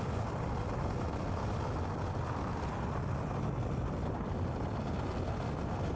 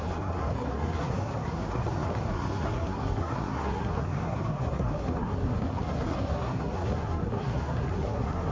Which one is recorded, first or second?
first